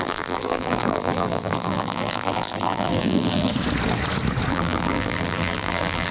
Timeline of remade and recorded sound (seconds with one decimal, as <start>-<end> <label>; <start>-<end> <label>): 0.0-3.5 remade; 3.5-4.5 recorded; 4.5-6.1 remade

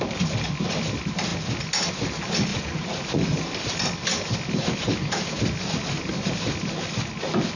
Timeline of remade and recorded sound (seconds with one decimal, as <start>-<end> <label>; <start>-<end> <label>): 0.0-2.5 recorded; 2.5-3.2 remade; 3.2-7.6 recorded

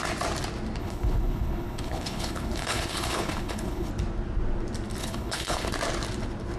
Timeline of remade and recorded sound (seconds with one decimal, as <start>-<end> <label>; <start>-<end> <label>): 0.0-0.8 recorded; 0.8-3.9 remade; 3.9-5.0 recorded; 5.0-5.7 remade; 5.7-6.6 recorded

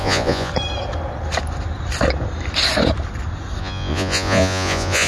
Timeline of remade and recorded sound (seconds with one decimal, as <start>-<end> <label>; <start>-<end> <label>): 0.0-0.5 remade; 0.5-3.6 recorded; 3.6-5.1 remade